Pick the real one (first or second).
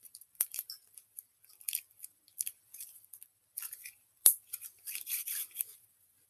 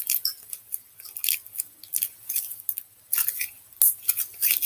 second